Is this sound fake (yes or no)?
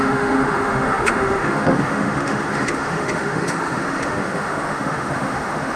yes